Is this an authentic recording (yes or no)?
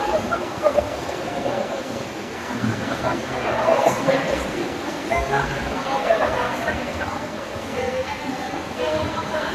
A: no